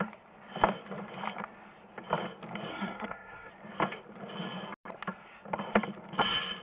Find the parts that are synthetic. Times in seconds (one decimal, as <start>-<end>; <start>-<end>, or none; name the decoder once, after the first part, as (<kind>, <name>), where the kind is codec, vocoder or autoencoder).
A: 2.7-3.5 (codec, SNAC)

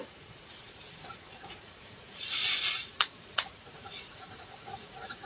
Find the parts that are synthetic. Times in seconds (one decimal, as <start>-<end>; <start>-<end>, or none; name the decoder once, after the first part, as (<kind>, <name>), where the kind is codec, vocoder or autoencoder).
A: 0.0-5.3 (vocoder, Vocos)

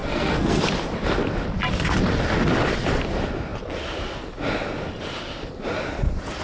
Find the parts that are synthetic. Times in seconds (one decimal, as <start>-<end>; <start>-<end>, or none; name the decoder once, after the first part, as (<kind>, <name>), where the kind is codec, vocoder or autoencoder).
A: 0.0-0.6 (codec, SNAC)

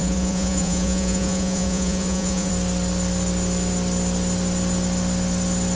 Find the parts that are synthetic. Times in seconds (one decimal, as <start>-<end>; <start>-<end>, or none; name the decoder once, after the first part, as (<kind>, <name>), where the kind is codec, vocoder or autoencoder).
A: 0.0-2.5 (vocoder, Vocos)

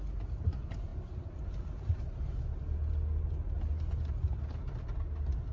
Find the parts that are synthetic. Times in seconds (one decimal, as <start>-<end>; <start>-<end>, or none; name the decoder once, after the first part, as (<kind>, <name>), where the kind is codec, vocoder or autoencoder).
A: none